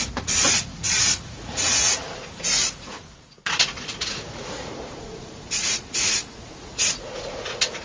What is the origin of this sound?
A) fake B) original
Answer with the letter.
A